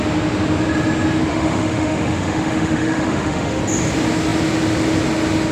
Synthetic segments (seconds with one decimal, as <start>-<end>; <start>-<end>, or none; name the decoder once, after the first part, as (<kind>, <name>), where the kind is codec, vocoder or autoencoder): 1.3-3.6 (autoencoder, DAC-VAE)